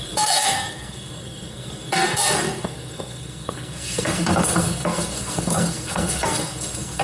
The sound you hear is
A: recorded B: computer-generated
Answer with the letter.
B